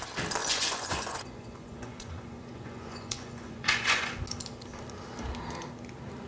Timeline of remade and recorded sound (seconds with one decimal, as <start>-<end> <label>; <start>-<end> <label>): 0.0-0.4 recorded; 0.4-4.2 remade; 4.2-6.3 recorded